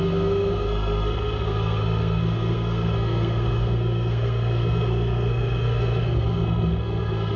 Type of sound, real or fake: fake